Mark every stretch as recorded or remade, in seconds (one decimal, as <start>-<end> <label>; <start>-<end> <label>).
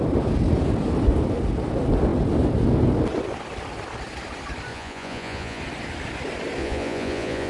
0.0-4.7 recorded; 4.7-5.6 remade; 5.6-6.6 recorded; 6.6-7.5 remade